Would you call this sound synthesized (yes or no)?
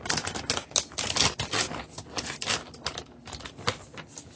no